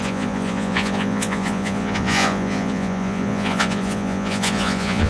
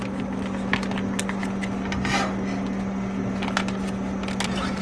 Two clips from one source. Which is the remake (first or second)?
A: first